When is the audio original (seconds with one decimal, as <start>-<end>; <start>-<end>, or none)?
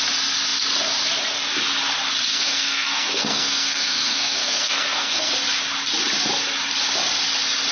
0.0-2.3; 5.3-7.7